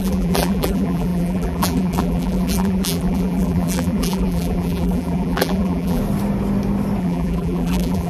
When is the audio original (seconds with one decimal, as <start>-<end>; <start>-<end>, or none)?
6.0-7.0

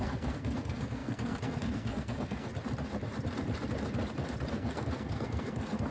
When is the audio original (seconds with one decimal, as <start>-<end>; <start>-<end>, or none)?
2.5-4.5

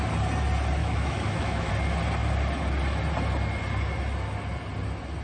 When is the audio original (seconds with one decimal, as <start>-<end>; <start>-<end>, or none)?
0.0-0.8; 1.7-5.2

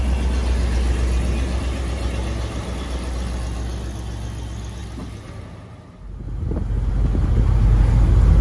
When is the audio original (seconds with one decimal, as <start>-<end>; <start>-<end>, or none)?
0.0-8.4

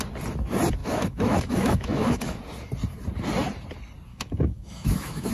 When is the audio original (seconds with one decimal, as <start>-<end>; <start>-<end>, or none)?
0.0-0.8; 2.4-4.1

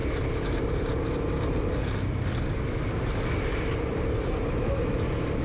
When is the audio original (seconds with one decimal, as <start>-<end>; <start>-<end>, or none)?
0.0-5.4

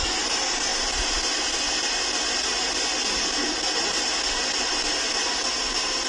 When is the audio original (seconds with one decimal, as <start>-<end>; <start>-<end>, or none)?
0.0-6.1

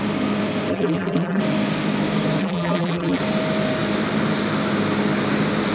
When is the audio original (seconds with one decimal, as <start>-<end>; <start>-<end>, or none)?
0.0-0.7; 1.4-2.4; 3.2-5.7